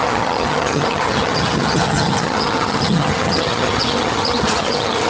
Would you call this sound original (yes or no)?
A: no